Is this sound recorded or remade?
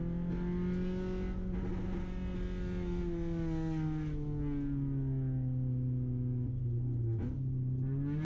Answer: recorded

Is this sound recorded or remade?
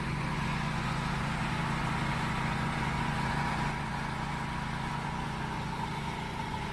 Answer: remade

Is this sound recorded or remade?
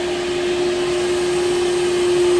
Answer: recorded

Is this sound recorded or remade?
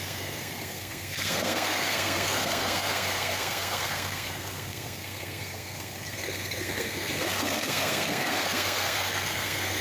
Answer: remade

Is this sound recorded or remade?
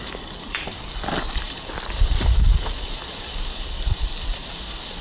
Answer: remade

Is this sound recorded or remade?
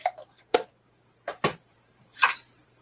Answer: remade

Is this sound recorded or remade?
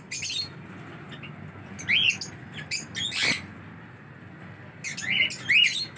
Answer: recorded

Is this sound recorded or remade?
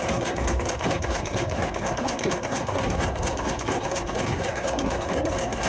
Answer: remade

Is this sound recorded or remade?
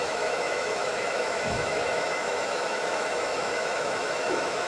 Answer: remade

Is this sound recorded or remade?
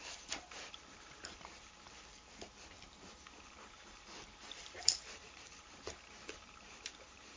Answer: remade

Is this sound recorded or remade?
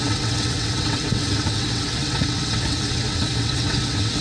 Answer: remade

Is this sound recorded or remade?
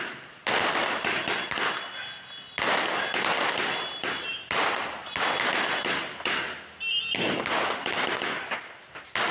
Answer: recorded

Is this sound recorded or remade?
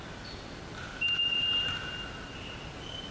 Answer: recorded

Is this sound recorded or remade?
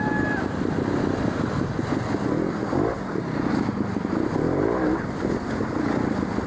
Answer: recorded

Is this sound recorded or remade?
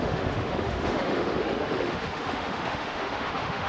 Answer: remade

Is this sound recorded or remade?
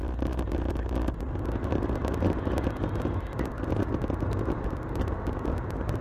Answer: recorded